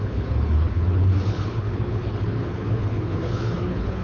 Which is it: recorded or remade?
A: remade